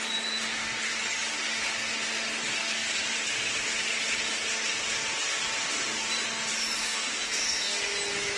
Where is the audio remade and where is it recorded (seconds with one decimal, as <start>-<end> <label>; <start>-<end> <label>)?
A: 0.0-6.8 recorded; 6.8-7.8 remade; 7.8-8.4 recorded